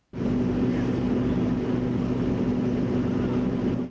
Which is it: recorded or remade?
recorded